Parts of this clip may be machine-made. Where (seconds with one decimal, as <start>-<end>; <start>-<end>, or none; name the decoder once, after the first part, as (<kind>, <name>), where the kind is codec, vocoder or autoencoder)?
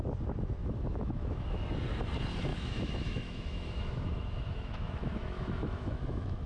0.6-1.6 (autoencoder, DAC-VAE); 2.5-6.5